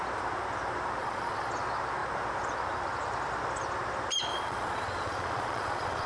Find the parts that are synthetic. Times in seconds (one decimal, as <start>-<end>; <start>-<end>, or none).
1.0-1.5; 4.3-6.1